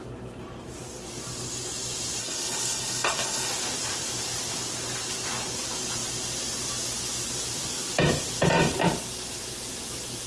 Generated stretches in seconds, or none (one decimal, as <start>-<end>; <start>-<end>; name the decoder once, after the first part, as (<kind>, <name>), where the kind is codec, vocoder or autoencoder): 2.2-3.5 (codec, HILCodec)